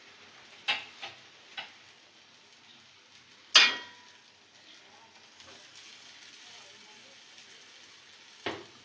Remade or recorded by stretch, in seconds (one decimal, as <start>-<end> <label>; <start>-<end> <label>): 0.0-8.8 recorded